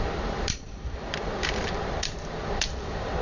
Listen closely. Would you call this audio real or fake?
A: fake